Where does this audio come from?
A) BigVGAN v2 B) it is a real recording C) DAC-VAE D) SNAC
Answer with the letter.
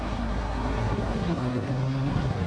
D